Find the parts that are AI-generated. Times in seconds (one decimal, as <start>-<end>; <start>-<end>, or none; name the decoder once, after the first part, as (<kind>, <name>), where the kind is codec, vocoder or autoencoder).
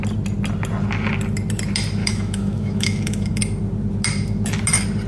2.0-3.4 (autoencoder, DAC-VAE)